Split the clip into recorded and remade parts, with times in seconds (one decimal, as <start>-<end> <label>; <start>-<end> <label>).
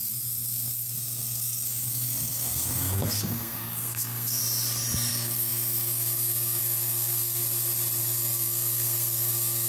0.0-4.4 remade; 4.4-5.1 recorded; 5.1-7.4 remade; 7.4-8.0 recorded; 8.0-9.7 remade